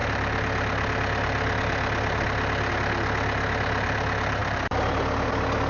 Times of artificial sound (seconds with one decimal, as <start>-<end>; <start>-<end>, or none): none